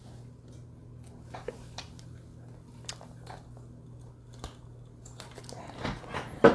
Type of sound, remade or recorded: recorded